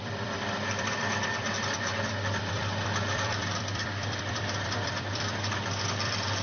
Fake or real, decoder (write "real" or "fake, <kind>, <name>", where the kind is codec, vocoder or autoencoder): fake, vocoder, BigVGAN v2